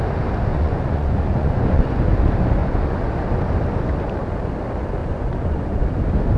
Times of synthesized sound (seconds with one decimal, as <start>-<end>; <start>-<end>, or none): 0.5-2.0; 2.6-3.1; 5.0-5.8